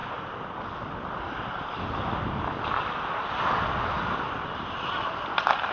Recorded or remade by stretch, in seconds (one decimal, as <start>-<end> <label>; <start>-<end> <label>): 0.0-5.7 recorded

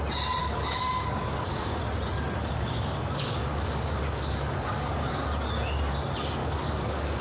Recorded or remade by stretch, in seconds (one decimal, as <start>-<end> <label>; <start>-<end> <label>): 0.0-0.4 recorded; 0.4-1.8 remade; 1.8-2.4 recorded; 2.4-5.1 remade; 5.1-6.4 recorded; 6.4-7.2 remade

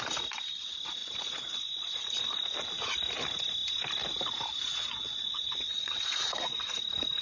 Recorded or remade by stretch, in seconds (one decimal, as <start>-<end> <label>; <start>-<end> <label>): 0.0-1.0 recorded; 1.0-2.3 remade; 2.3-4.7 recorded; 4.7-6.7 remade; 6.7-7.2 recorded

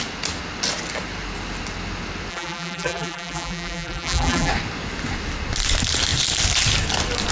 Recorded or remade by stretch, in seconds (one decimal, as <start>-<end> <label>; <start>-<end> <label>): 0.0-2.3 recorded; 2.3-4.5 remade; 4.5-7.3 recorded